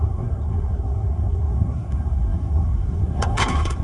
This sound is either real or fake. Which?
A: fake